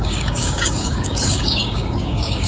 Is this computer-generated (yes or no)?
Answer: yes